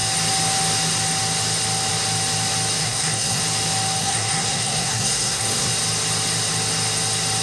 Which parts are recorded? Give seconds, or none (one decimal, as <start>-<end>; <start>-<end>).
0.0-2.8; 3.4-4.0; 5.7-7.4